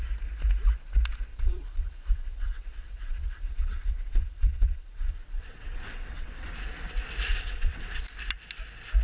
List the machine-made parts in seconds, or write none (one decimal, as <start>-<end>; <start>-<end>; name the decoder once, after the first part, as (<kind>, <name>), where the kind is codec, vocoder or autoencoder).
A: 1.3-6.5 (vocoder, WaveNeXt); 7.3-8.0